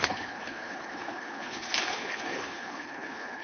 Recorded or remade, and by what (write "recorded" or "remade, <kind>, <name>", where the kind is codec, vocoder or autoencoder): remade, codec, HILCodec